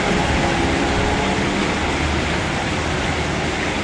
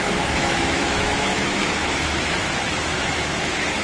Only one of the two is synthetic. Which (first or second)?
second